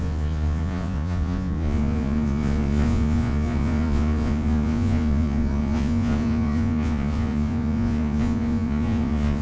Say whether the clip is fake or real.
fake